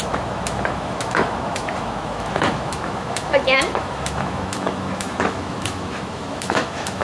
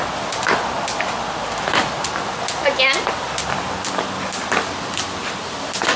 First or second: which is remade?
first